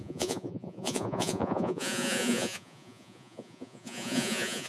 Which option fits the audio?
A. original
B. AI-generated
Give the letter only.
B